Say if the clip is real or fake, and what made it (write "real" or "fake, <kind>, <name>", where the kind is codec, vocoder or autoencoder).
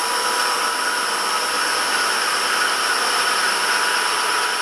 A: real